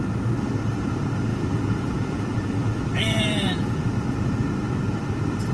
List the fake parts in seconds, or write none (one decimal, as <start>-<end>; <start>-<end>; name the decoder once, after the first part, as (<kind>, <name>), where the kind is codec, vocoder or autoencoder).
1.3-3.9 (vocoder, BigVGAN v2)